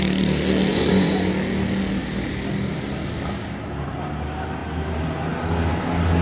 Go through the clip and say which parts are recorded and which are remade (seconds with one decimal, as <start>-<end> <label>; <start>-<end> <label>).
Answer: 0.0-0.7 recorded; 0.7-1.3 remade; 1.3-6.2 recorded